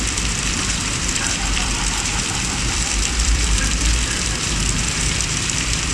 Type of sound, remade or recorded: remade